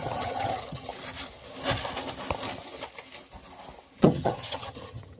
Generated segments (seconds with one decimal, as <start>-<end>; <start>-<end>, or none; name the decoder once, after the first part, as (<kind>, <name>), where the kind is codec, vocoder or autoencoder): 0.0-0.9 (vocoder, HiFi-GAN); 4.0-5.2